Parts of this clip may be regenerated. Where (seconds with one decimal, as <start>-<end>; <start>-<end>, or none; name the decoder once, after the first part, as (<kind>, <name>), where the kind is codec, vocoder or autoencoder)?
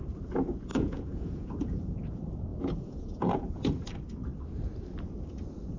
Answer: 0.7-2.0 (vocoder, Vocos); 2.5-3.4